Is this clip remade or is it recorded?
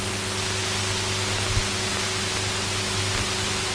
recorded